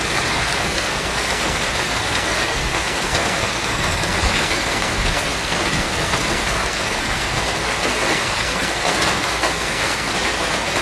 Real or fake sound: fake